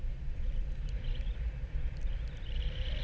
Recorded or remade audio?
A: recorded